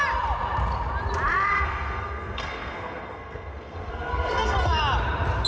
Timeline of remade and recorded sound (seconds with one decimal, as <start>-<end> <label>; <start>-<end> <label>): 0.0-1.5 recorded; 1.5-4.8 remade; 4.8-5.5 recorded